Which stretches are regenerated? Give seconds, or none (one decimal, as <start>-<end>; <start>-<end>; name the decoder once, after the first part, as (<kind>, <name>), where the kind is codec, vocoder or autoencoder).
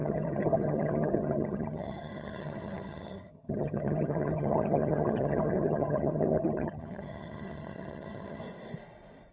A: 0.0-8.4 (vocoder, HiFi-GAN)